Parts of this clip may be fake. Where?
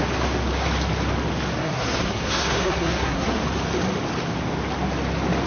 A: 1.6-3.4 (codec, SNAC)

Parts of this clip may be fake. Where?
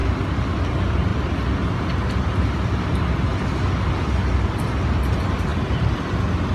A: none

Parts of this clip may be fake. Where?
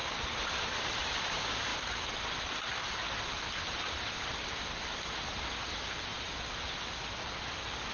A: none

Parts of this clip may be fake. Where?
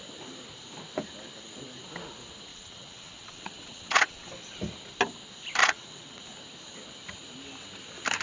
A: 2.5-4.3 (vocoder, WaveNeXt); 5.6-6.2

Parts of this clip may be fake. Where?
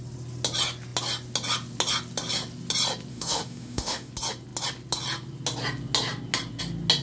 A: 3.1-4.1 (autoencoder, DAC-VAE)